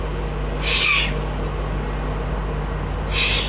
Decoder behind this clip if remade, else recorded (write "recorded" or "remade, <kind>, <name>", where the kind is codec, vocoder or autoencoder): recorded